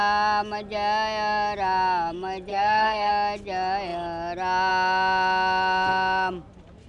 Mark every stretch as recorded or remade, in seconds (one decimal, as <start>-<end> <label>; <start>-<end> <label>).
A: 0.0-2.5 recorded; 2.5-3.1 remade; 3.1-6.9 recorded